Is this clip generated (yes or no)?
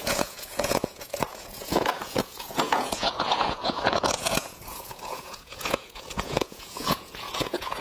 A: yes